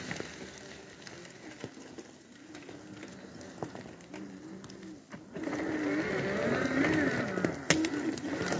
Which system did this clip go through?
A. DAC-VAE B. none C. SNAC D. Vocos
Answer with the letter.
B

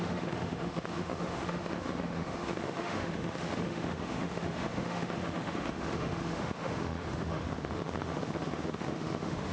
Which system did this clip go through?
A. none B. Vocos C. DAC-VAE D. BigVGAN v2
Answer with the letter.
C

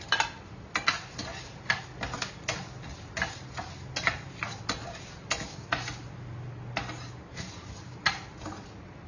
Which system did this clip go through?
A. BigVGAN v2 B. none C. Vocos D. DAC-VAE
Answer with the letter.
B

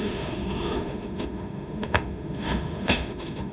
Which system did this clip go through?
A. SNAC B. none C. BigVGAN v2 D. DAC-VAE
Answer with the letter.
D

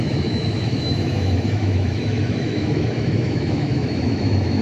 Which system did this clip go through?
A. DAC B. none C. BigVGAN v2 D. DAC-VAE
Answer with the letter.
D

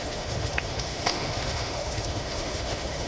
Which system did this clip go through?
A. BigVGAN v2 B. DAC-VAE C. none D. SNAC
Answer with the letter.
B